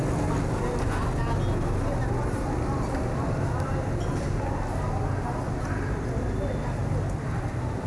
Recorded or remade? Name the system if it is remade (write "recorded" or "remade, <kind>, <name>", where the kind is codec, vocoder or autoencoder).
recorded